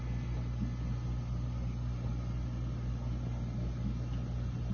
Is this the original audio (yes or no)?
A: yes